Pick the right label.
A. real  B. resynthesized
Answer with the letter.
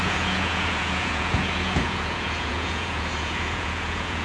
B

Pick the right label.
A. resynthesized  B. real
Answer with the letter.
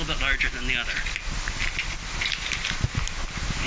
B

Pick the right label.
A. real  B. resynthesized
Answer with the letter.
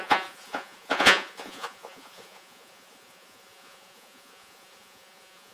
B